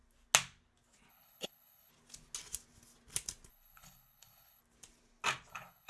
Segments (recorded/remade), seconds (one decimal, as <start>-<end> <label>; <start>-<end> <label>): 0.0-1.1 recorded; 1.1-1.9 remade; 1.9-3.5 recorded; 3.5-4.6 remade; 4.6-5.5 recorded; 5.5-5.9 remade